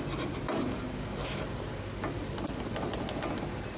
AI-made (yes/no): no